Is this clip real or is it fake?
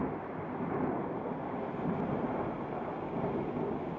real